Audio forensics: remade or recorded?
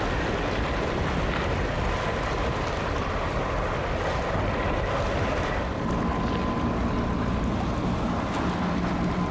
recorded